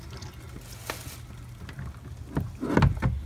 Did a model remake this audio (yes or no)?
no